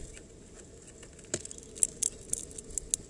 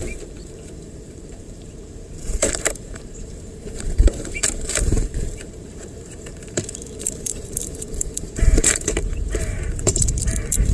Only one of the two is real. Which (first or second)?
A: first